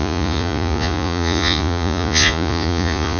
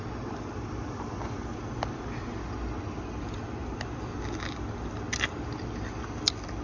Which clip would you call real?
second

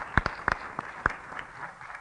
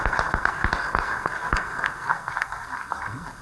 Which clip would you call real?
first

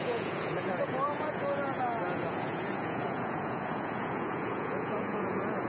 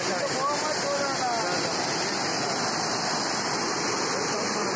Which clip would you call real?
second